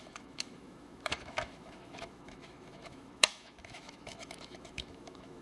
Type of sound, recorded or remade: remade